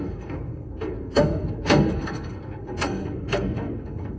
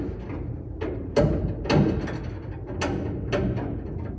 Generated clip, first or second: first